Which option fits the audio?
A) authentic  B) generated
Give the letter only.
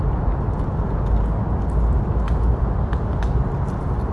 A